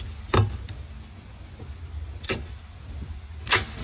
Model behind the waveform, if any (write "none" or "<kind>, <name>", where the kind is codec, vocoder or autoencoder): none